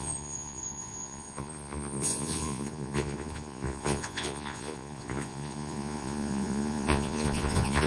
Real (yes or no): no